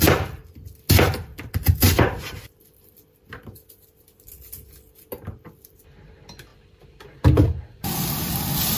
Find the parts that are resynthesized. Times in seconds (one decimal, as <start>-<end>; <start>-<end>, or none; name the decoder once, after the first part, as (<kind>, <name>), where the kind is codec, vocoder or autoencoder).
1.3-3.0 (vocoder, BigVGAN v2); 6.5-8.4